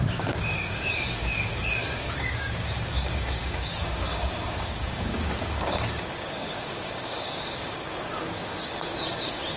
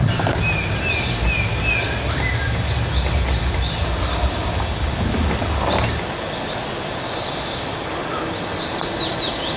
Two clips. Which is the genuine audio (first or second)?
second